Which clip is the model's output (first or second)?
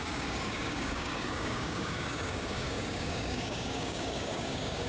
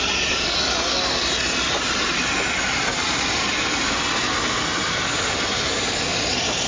first